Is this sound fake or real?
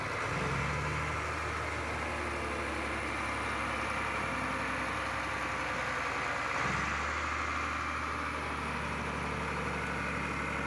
real